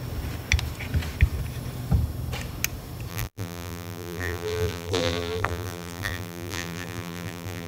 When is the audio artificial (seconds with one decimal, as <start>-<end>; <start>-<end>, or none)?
3.1-7.7